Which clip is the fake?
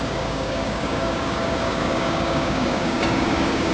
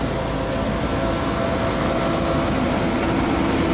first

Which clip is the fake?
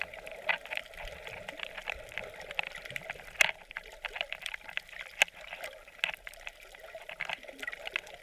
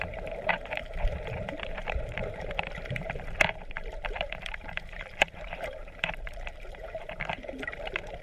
second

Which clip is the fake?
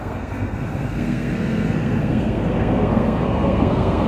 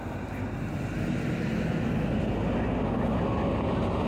first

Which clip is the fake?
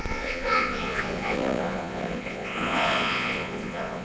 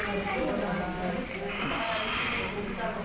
first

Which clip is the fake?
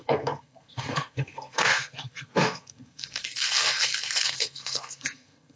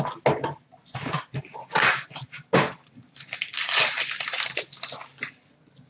first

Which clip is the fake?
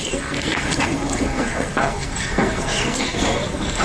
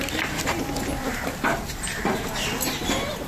first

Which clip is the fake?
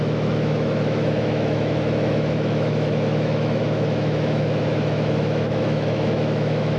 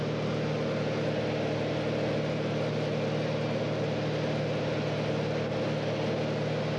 first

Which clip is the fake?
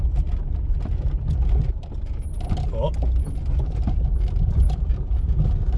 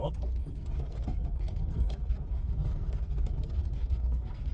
second